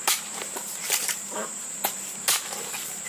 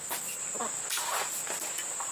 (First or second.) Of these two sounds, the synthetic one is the first